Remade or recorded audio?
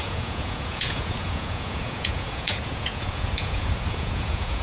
remade